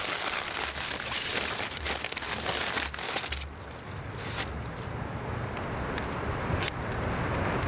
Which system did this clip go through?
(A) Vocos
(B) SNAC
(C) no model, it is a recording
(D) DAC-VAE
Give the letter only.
C